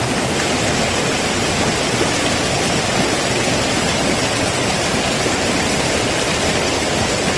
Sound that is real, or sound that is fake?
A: real